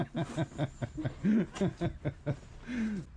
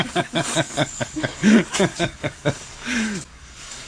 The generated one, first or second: second